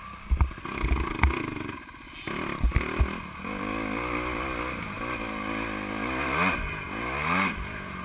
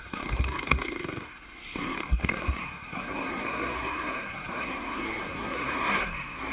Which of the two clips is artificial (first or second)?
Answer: second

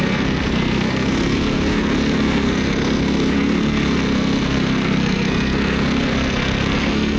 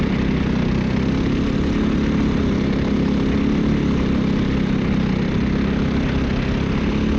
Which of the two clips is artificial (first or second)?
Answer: first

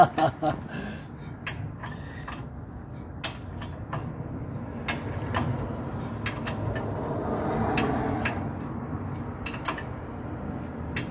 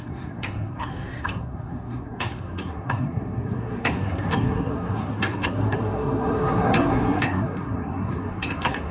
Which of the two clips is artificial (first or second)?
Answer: second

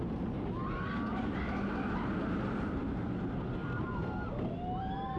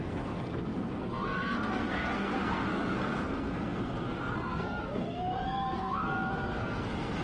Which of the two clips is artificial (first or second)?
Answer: second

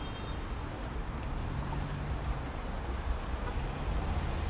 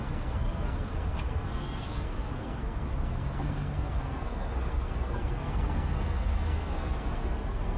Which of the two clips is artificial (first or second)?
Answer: second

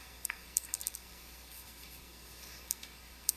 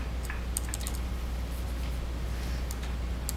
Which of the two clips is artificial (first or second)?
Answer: first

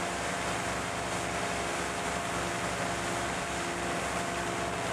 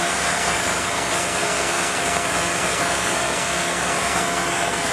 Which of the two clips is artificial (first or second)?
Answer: second